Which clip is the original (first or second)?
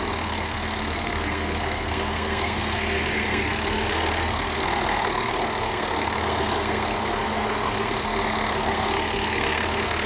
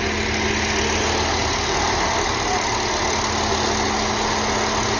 second